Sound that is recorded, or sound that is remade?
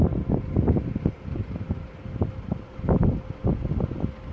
recorded